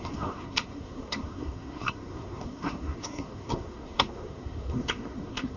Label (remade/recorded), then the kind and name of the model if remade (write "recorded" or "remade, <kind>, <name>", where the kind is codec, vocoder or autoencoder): remade, codec, SNAC